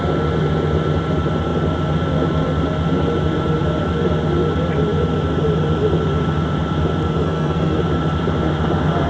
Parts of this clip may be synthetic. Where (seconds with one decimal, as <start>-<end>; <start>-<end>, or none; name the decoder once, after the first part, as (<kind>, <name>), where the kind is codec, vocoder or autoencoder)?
7.2-7.8 (codec, SNAC)